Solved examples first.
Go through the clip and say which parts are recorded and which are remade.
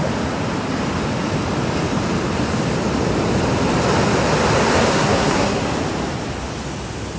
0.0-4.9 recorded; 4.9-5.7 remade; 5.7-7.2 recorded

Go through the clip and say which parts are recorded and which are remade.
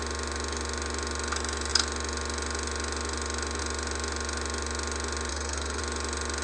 0.0-5.3 recorded; 5.3-5.8 remade; 5.8-6.4 recorded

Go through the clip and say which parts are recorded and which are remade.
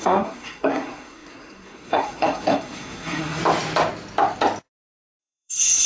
0.0-3.4 remade; 3.4-5.2 recorded; 5.2-5.9 remade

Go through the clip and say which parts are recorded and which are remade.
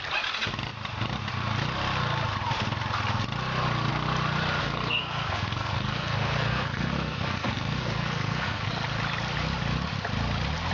0.0-4.6 recorded; 4.6-8.7 remade; 8.7-10.7 recorded